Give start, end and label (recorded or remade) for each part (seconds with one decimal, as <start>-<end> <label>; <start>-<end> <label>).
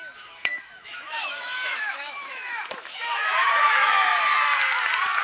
0.0-4.1 remade; 4.1-5.2 recorded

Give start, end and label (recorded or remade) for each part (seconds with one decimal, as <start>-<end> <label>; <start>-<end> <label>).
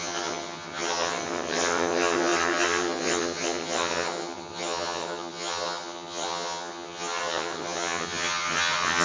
0.0-9.0 remade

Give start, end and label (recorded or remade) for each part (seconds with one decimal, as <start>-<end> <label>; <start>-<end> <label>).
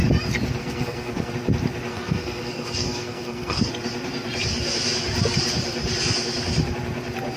0.0-0.6 recorded; 0.6-1.3 remade; 1.3-1.9 recorded; 1.9-3.7 remade; 3.7-7.4 recorded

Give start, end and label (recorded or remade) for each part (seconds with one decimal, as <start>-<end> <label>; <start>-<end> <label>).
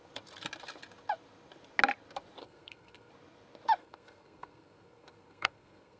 0.0-2.4 recorded; 2.4-3.1 remade; 3.1-3.8 recorded; 3.8-6.0 remade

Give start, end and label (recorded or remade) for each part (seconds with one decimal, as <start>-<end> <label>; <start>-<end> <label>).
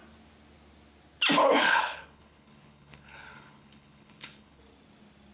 0.0-1.4 recorded; 1.4-4.6 remade; 4.6-5.3 recorded